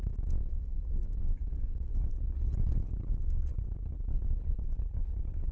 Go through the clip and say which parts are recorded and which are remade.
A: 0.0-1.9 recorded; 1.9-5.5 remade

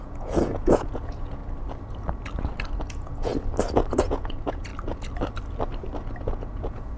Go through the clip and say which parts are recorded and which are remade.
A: 0.0-1.4 remade; 1.4-2.9 recorded; 2.9-3.3 remade; 3.3-3.9 recorded; 3.9-4.7 remade; 4.7-6.2 recorded; 6.2-7.0 remade

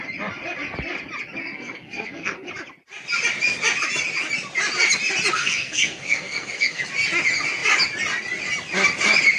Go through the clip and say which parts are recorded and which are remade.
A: 0.0-1.4 recorded; 1.4-2.5 remade; 2.5-5.3 recorded; 5.3-6.8 remade; 6.8-9.4 recorded

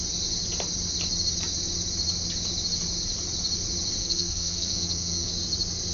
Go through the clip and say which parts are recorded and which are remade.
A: 0.0-4.0 recorded; 4.0-5.3 remade; 5.3-5.9 recorded

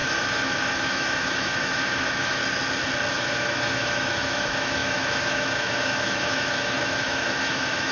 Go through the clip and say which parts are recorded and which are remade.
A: 0.0-2.4 remade; 2.4-3.1 recorded; 3.1-7.9 remade

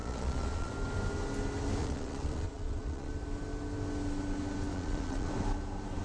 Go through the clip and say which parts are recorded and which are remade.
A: 0.0-0.7 remade; 0.7-1.8 recorded; 1.8-3.1 remade; 3.1-4.7 recorded; 4.7-5.3 remade; 5.3-6.0 recorded